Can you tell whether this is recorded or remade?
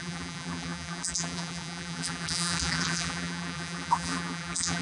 remade